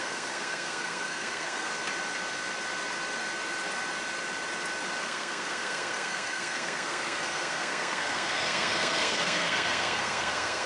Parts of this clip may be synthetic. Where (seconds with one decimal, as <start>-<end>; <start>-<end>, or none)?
0.0-1.7; 5.0-10.7